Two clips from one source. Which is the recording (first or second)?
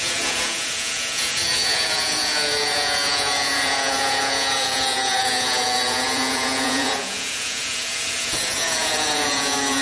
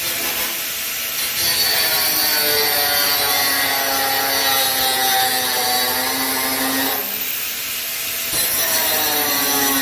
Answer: second